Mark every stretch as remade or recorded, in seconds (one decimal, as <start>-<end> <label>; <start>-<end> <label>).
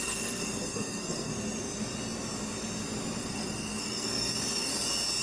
0.0-1.3 remade; 1.3-3.2 recorded; 3.2-4.7 remade; 4.7-5.2 recorded